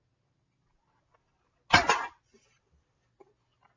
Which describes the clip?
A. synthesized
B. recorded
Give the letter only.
B